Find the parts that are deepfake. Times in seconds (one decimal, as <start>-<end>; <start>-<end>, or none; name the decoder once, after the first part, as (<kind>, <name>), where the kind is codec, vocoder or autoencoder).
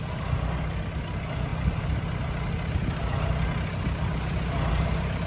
none